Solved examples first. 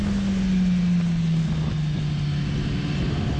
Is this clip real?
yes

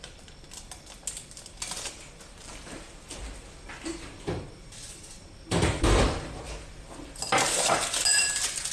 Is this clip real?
yes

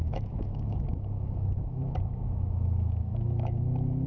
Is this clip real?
no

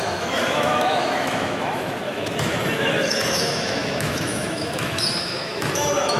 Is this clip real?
no